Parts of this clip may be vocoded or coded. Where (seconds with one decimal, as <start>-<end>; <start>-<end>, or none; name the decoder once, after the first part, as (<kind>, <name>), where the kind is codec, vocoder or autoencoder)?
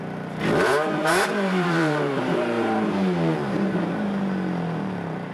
1.0-4.2 (vocoder, BigVGAN v2)